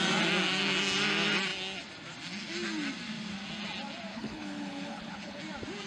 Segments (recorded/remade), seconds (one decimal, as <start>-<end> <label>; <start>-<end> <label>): 0.0-4.1 recorded; 4.1-5.4 remade; 5.4-5.9 recorded